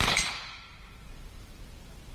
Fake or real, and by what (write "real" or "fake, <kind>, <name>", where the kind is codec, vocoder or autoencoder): fake, vocoder, BigVGAN v2